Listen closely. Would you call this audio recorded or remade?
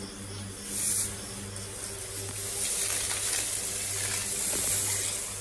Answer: recorded